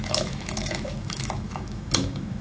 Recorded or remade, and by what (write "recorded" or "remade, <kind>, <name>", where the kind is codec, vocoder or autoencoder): remade, autoencoder, DAC-VAE